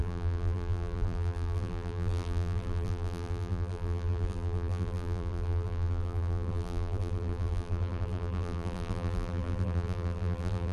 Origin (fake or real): fake